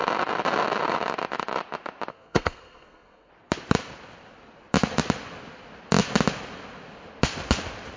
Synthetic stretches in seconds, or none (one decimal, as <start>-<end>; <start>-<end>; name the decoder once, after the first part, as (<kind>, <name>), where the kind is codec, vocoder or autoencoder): 2.1-3.3 (codec, SNAC)